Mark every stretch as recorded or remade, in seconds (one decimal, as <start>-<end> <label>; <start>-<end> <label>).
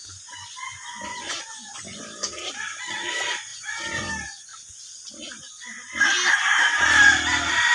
0.0-2.0 remade; 2.0-3.5 recorded; 3.5-4.1 remade; 4.1-7.7 recorded